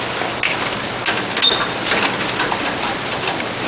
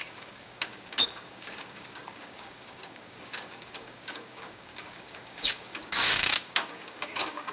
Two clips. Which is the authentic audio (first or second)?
first